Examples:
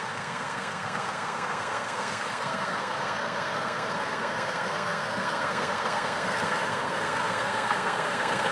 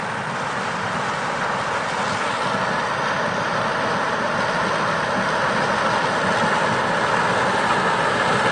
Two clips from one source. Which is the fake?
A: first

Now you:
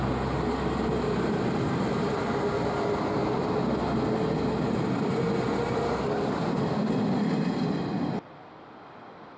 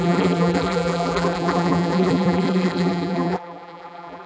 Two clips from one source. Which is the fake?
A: second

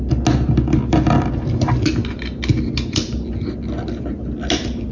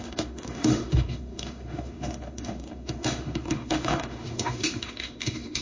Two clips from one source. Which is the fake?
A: second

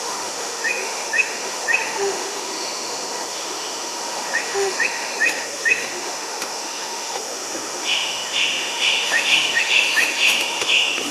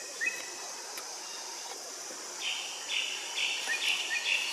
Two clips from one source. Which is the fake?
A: first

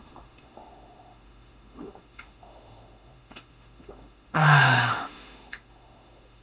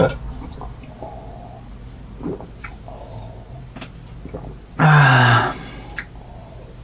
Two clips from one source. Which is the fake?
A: first